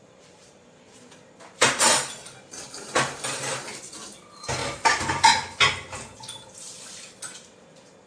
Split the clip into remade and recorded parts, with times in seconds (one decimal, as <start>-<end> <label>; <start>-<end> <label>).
0.0-4.6 remade; 4.6-8.1 recorded